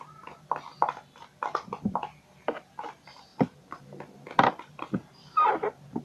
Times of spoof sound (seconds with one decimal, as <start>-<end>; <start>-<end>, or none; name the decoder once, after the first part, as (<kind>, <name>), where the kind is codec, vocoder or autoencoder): none